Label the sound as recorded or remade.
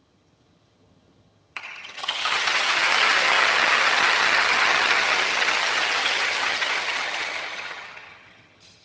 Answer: remade